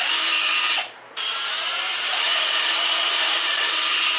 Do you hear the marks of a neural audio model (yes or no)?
yes